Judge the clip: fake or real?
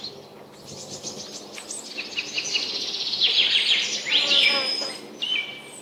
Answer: real